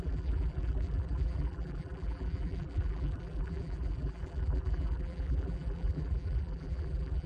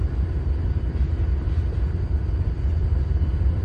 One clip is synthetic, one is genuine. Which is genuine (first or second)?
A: second